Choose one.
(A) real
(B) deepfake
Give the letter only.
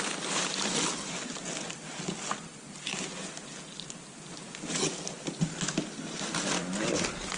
A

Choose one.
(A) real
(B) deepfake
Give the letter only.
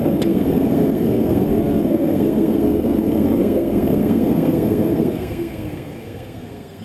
B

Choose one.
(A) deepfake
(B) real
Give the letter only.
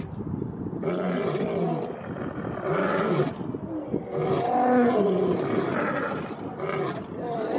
B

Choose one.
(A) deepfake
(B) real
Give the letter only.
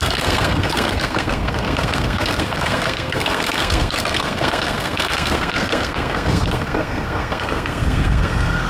A